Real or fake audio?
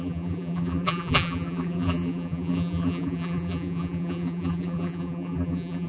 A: fake